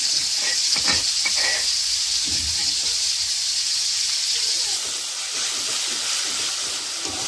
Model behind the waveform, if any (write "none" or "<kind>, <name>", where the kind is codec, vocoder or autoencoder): none